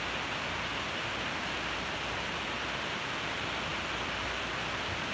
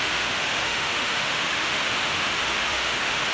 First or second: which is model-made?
second